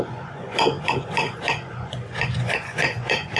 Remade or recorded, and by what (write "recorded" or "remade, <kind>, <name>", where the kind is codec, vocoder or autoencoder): remade, vocoder, Vocos